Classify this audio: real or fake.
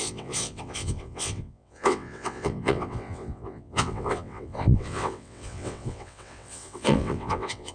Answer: fake